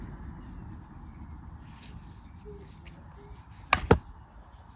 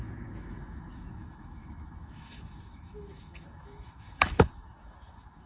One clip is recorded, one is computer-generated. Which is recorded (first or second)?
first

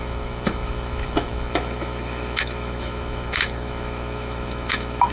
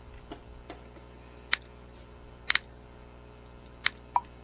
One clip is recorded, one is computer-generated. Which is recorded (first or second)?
second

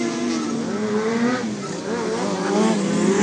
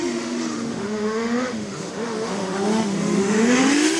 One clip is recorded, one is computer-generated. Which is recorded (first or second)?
first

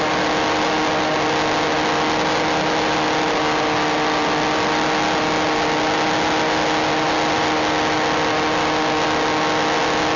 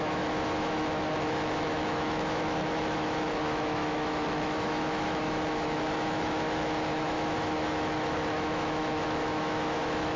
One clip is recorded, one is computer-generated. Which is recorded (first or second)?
first